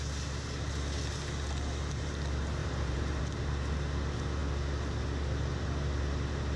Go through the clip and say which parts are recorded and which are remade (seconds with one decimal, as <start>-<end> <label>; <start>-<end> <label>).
0.0-2.6 recorded; 2.6-3.2 remade; 3.2-6.6 recorded